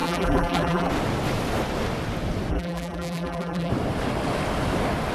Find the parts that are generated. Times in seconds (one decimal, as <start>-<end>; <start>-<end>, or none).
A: 0.0-0.9; 2.5-3.7